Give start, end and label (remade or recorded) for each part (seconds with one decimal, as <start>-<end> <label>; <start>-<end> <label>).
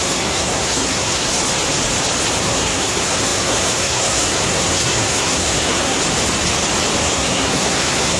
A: 0.0-1.4 remade; 1.4-2.4 recorded; 2.4-6.0 remade; 6.0-7.0 recorded; 7.0-8.2 remade